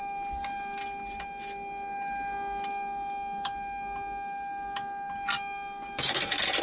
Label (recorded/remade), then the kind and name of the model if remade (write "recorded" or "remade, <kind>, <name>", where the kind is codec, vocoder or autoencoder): recorded